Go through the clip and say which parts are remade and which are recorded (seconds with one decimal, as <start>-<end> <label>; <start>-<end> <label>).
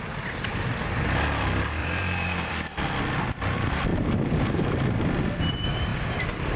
0.0-1.8 recorded; 1.8-2.5 remade; 2.5-3.9 recorded; 3.9-4.9 remade; 4.9-6.6 recorded